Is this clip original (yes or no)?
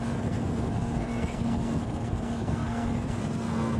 no